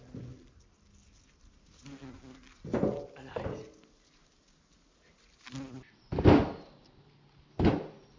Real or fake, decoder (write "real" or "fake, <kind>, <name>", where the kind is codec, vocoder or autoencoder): real